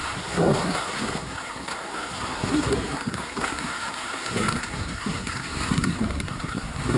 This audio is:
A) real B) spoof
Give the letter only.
B